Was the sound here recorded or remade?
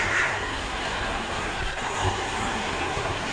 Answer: remade